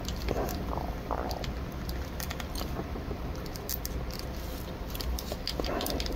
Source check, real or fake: real